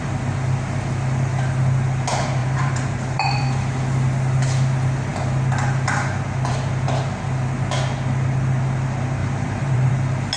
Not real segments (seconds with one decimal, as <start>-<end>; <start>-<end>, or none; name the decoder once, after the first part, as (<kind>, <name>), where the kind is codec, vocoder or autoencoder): 2.4-3.4 (vocoder, BigVGAN v2); 9.2-9.9